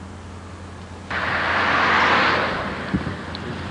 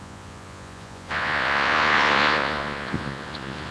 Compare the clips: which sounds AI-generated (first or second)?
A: second